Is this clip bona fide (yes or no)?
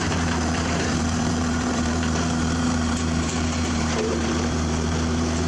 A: no